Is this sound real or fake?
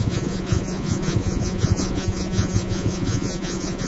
fake